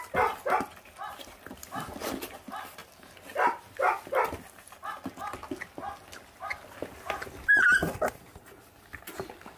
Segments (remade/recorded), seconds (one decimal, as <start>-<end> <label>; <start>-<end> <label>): 0.0-9.6 recorded